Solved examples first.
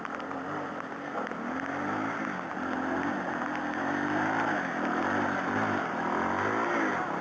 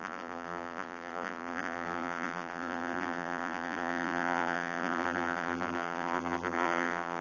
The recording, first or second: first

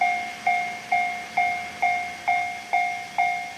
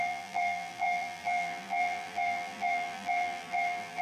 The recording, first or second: first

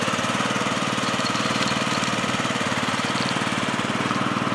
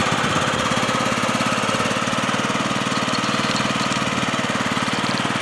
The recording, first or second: second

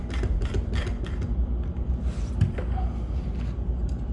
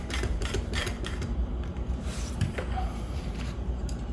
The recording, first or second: first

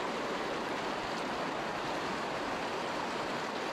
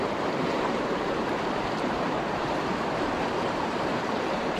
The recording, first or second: first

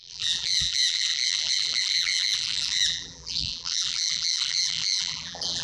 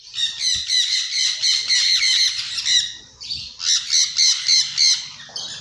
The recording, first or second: second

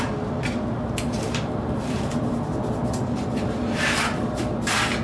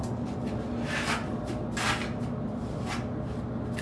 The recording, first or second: second